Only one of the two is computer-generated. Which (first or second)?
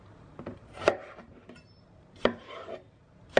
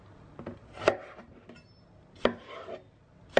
first